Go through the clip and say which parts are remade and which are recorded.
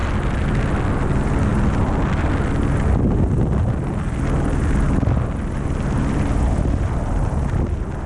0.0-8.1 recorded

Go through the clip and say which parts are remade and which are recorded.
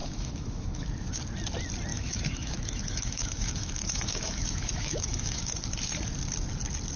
0.0-0.9 remade; 0.9-1.9 recorded; 1.9-5.6 remade; 5.6-7.0 recorded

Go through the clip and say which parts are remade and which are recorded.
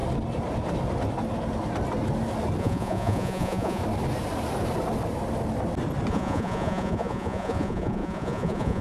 0.0-2.6 recorded; 2.6-3.8 remade; 3.8-6.1 recorded; 6.1-8.8 remade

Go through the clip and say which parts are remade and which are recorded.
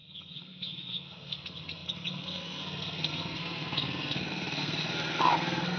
0.0-5.8 remade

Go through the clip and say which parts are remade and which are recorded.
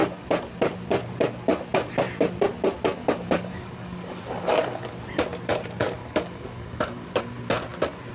0.0-3.0 recorded; 3.0-5.0 remade; 5.0-6.0 recorded; 6.0-7.2 remade; 7.2-8.1 recorded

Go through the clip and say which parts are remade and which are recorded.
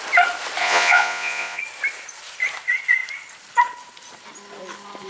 0.0-0.6 recorded; 0.6-1.6 remade; 1.6-5.1 recorded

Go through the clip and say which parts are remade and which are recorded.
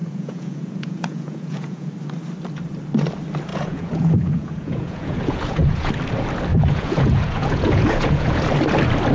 0.0-1.9 remade; 1.9-3.5 recorded; 3.5-5.9 remade; 5.9-6.5 recorded; 6.5-8.4 remade; 8.4-9.1 recorded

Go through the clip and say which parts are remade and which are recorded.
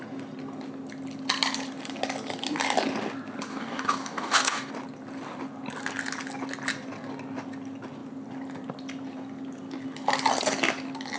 0.0-3.5 recorded; 3.5-4.7 remade; 4.7-11.2 recorded